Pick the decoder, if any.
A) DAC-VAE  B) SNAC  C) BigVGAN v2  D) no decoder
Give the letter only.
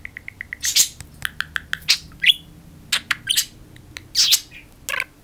D